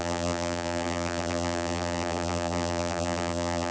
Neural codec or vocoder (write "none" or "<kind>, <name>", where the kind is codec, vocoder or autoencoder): vocoder, BigVGAN v2